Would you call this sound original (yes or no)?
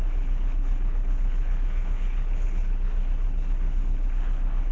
no